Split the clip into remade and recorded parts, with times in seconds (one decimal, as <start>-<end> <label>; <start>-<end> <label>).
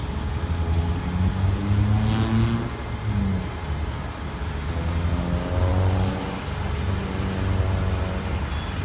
0.0-5.7 recorded; 5.7-6.4 remade; 6.4-8.8 recorded